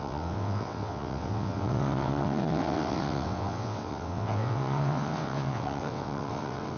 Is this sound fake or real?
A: fake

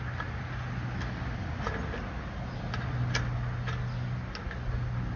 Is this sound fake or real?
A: real